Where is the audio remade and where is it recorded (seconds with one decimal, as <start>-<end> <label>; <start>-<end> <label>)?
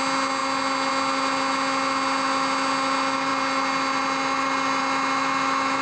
0.0-5.8 recorded